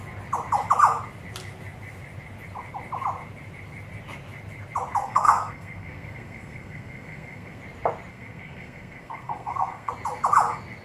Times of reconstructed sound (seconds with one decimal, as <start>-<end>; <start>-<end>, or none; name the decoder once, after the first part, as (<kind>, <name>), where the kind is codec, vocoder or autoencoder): 5.0-7.6 (codec, SNAC); 8.1-9.9